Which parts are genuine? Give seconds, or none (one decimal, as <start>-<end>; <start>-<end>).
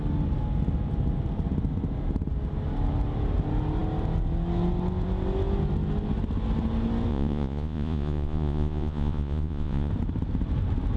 0.0-7.1; 9.9-11.0